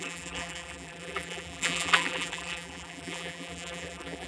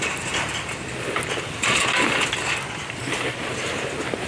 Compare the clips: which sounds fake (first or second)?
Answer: first